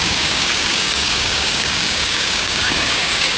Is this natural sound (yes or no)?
no